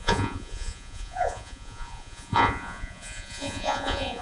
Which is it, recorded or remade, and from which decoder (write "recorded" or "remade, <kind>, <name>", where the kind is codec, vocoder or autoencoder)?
remade, vocoder, Vocos